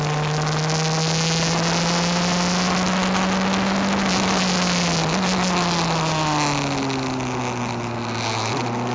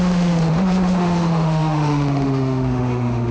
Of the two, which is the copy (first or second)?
second